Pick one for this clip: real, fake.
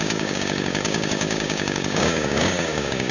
fake